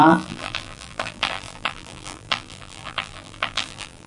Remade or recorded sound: remade